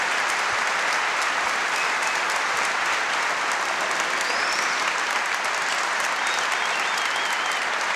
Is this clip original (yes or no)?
yes